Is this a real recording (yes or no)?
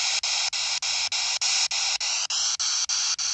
yes